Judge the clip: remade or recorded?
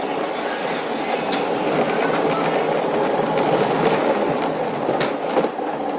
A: recorded